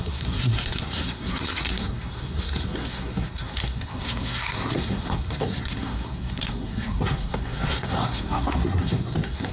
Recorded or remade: remade